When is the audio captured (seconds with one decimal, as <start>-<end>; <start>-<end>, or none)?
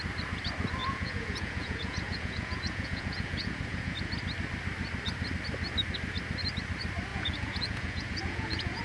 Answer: 0.0-0.8; 4.1-7.1